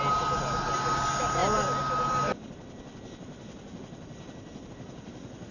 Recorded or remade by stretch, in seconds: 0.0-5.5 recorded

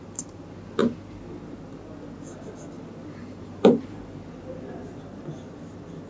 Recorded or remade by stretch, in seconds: 0.0-3.2 recorded; 3.2-4.0 remade; 4.0-6.1 recorded